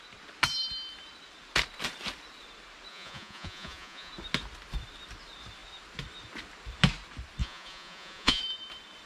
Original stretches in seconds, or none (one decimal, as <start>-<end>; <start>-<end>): 0.0-2.9; 4.1-7.4; 8.4-9.1